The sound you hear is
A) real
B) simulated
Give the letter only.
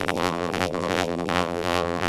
B